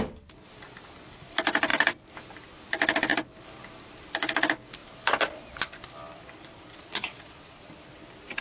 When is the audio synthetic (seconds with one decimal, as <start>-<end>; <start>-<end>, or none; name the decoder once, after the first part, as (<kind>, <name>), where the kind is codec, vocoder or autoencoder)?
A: 6.7-7.7 (vocoder, Vocos)